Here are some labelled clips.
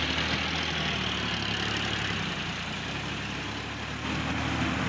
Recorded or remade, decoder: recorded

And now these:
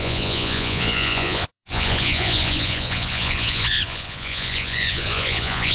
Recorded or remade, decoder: remade, vocoder, Vocos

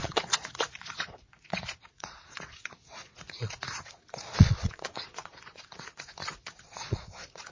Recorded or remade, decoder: remade, vocoder, Vocos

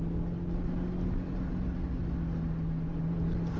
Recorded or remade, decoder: recorded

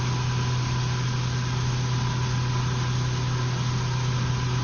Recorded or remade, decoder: recorded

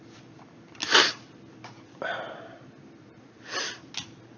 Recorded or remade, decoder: recorded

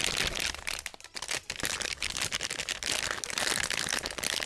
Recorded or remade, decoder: recorded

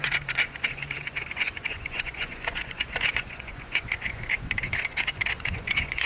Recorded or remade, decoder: remade, vocoder, Vocos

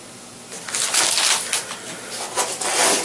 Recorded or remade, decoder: recorded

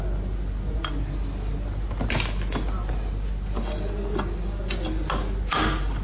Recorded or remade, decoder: recorded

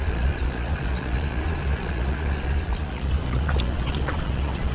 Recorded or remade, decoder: remade, vocoder, Vocos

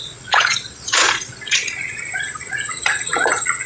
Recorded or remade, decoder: remade, vocoder, Vocos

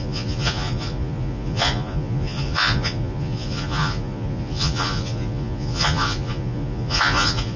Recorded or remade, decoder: remade, vocoder, Vocos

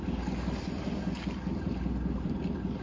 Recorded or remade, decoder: recorded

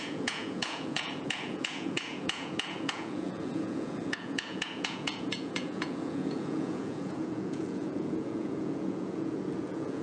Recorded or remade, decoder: remade, vocoder, Vocos